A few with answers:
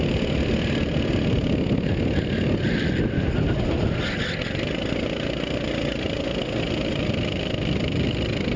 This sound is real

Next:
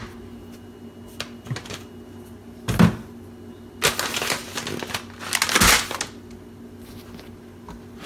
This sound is real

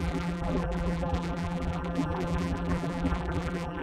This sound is fake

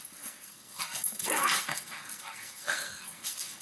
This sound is fake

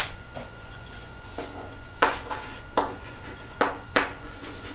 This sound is fake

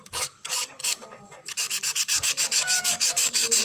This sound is fake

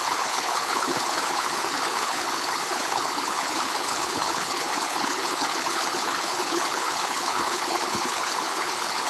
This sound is fake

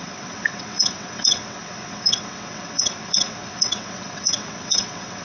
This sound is fake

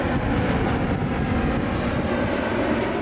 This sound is real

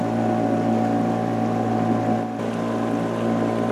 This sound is real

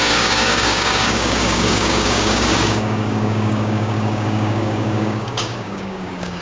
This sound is fake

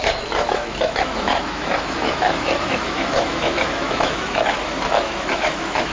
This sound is fake